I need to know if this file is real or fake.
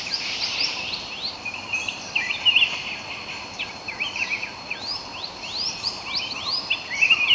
fake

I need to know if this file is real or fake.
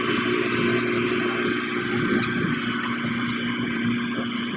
real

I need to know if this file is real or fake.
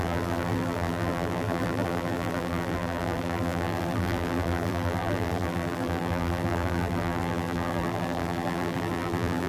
fake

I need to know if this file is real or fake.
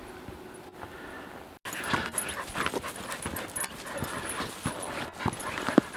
real